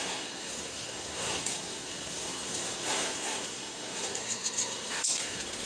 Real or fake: fake